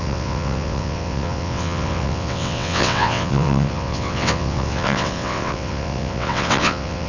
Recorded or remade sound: remade